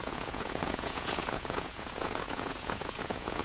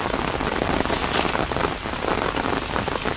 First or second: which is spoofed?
first